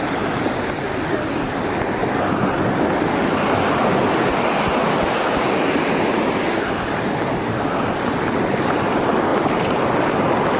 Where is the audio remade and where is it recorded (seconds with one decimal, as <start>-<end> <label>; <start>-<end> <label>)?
0.0-10.6 recorded